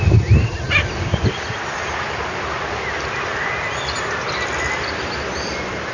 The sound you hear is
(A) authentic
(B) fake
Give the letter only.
A